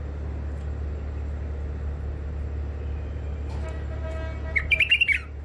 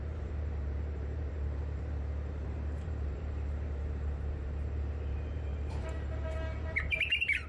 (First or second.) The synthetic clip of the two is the second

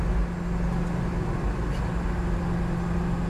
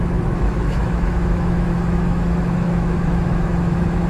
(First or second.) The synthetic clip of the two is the second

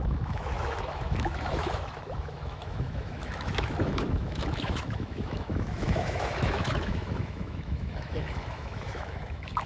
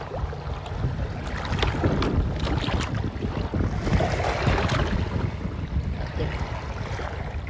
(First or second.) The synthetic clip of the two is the first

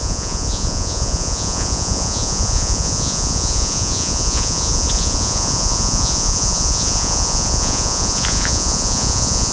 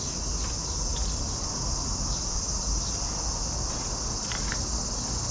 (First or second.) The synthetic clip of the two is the first